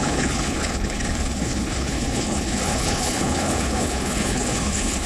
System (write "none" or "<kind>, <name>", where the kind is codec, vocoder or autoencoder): codec, HILCodec